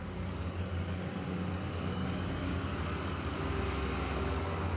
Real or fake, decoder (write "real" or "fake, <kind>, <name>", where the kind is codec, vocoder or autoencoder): fake, codec, DAC